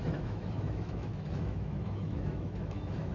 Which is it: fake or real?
fake